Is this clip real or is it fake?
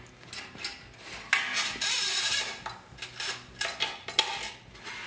real